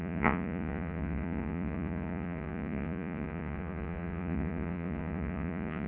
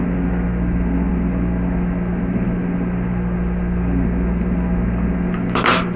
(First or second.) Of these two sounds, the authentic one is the second